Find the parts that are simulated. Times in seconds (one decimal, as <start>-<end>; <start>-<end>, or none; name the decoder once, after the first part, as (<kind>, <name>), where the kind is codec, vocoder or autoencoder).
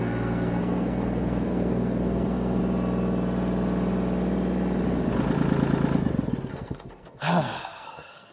0.0-2.6 (codec, SNAC); 6.5-8.3